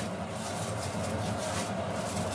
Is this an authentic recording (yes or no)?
no